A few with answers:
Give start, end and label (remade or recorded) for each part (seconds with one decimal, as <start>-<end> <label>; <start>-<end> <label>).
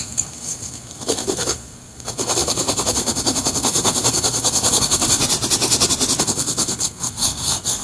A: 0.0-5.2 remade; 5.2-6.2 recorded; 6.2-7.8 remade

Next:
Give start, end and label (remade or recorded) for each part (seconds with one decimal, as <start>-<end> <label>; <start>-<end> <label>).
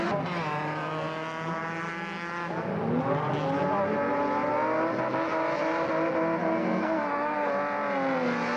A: 0.0-6.4 recorded; 6.4-7.5 remade; 7.5-8.6 recorded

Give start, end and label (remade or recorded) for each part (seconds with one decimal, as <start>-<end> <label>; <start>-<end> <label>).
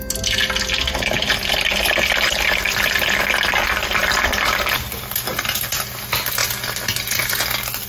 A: 0.0-7.9 recorded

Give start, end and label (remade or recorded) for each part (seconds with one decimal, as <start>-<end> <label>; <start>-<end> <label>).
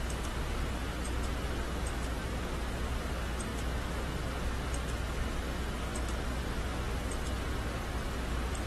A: 0.0-8.7 recorded